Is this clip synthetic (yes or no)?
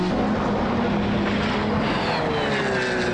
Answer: no